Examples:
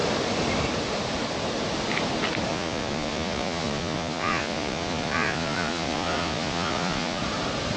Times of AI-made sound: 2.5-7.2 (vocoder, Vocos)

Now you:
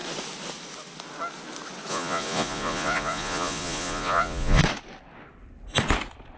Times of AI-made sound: 1.9-4.6 (vocoder, Vocos)

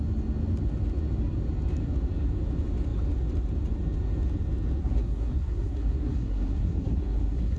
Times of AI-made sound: 4.8-7.6 (codec, SNAC)

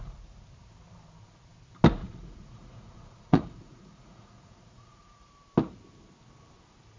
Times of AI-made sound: 2.0-5.3 (vocoder, Vocos)

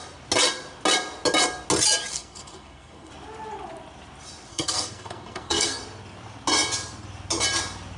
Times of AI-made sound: 2.1-3.1 (codec, SNAC); 4.5-5.8

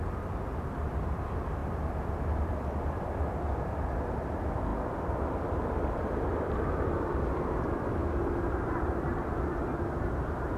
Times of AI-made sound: 0.0-10.6 (vocoder, BigVGAN v2)

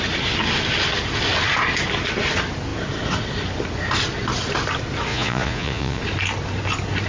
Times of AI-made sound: 5.1-6.0 (vocoder, Vocos)

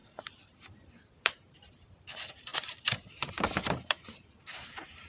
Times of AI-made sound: 0.9-5.1 (vocoder, BigVGAN v2)